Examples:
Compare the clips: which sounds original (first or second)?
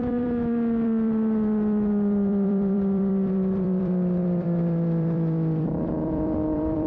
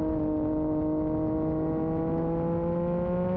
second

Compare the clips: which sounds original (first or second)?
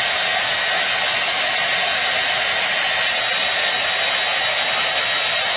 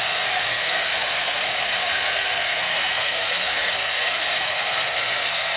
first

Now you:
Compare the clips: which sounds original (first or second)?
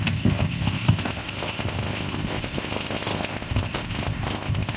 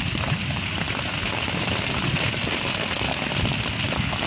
second